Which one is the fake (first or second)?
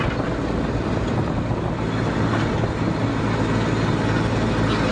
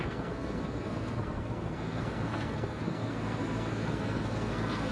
second